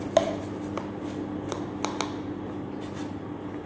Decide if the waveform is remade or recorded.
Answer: recorded